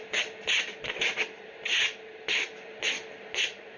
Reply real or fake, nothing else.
real